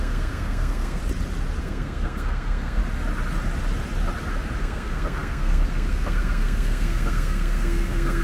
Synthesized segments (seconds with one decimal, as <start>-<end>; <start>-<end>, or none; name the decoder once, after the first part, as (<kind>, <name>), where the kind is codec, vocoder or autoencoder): 0.0-1.0 (codec, SNAC); 1.6-2.8; 4.6-8.2